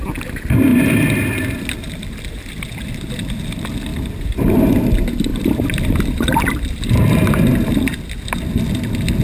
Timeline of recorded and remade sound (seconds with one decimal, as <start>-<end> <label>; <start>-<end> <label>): 0.0-0.7 recorded; 0.7-2.8 remade; 2.8-3.9 recorded; 3.9-4.6 remade; 4.6-5.3 recorded; 5.3-7.0 remade; 7.0-9.2 recorded